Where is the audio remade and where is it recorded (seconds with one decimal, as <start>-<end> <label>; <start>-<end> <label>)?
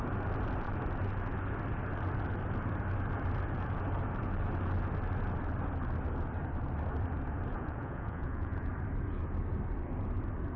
0.0-7.5 recorded; 7.5-8.7 remade; 8.7-10.6 recorded